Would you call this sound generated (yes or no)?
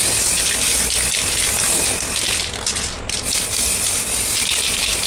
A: no